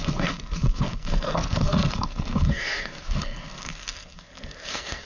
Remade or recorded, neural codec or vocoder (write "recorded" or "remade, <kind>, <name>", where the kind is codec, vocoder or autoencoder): remade, codec, SNAC